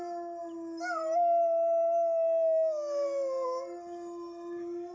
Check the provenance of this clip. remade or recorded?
recorded